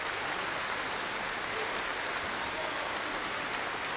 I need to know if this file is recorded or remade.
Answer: recorded